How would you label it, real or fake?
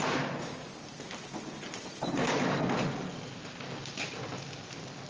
real